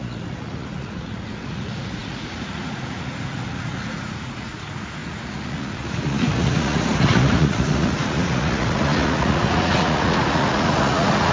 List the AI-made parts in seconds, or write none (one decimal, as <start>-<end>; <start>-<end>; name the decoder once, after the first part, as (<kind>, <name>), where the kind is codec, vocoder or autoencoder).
0.0-11.3 (vocoder, Vocos)